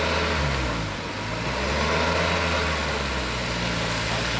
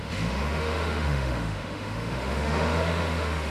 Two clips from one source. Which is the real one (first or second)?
first